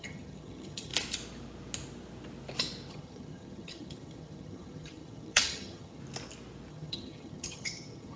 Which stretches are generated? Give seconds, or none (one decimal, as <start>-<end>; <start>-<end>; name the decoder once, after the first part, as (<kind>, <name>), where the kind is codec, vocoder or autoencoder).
0.0-0.9 (vocoder, HiFi-GAN); 2.9-6.0; 6.7-8.2